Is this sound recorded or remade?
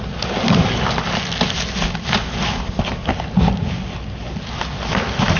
recorded